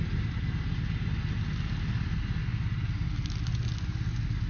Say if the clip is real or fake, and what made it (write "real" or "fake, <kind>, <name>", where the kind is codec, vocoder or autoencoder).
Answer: real